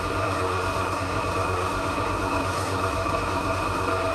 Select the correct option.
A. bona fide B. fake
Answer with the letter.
B